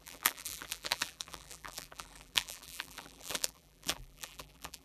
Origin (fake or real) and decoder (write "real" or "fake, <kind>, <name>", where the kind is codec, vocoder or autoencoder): fake, vocoder, BigVGAN v2